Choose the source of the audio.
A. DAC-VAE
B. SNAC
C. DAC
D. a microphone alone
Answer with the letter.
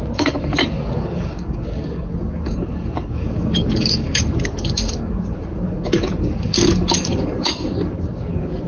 C